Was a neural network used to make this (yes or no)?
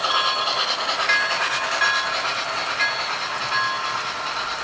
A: no